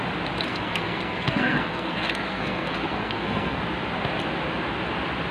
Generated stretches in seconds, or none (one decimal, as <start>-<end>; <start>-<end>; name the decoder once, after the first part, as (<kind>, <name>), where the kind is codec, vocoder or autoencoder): 0.5-3.6 (codec, SNAC)